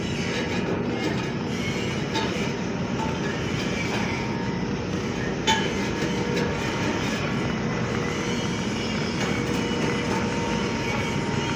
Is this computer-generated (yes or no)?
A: no